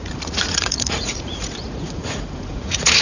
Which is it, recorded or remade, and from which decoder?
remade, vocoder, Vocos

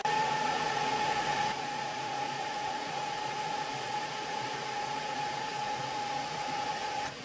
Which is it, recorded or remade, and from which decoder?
remade, vocoder, Vocos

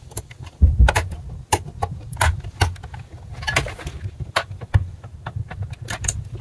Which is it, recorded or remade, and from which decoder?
recorded